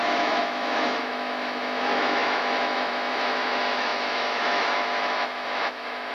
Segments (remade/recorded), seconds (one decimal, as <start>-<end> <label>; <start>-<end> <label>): 0.0-6.1 remade